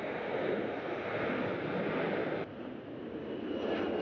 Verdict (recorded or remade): recorded